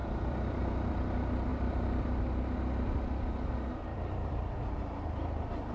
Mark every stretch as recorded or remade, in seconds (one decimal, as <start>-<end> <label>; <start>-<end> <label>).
0.0-0.6 remade; 0.6-1.5 recorded; 1.5-2.2 remade; 2.2-3.9 recorded; 3.9-4.5 remade; 4.5-5.7 recorded